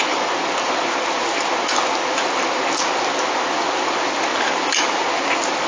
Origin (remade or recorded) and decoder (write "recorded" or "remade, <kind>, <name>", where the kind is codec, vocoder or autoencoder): recorded